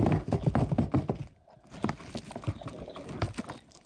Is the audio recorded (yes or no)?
yes